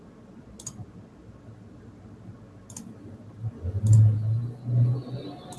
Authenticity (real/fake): real